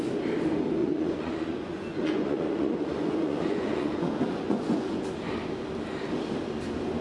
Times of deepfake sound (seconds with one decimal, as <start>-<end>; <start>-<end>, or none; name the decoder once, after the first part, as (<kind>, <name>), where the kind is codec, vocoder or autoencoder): 0.8-5.0 (vocoder, Vocos)